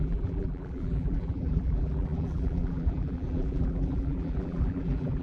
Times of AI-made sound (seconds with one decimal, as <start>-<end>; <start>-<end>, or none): 0.0-5.2